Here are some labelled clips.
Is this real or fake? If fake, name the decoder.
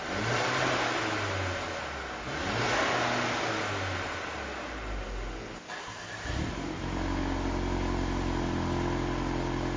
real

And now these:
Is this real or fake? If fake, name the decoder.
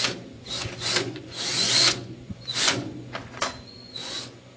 fake, vocoder, Vocos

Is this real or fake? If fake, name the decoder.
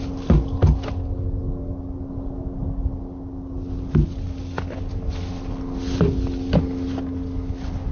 real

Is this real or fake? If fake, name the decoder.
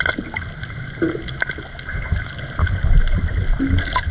real